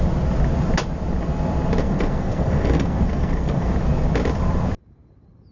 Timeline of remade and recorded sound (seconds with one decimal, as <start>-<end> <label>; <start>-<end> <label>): 0.0-1.8 recorded; 1.8-3.7 remade; 3.7-5.5 recorded